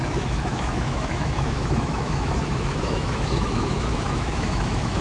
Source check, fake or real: fake